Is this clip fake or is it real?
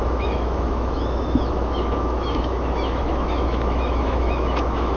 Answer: fake